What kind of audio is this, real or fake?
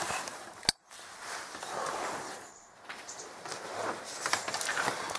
real